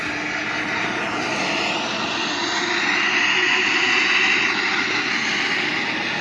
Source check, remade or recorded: recorded